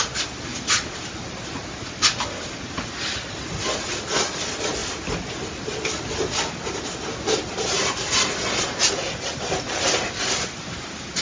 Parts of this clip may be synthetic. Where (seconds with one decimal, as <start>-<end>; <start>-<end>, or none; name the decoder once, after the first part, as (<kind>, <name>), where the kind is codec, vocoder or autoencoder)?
none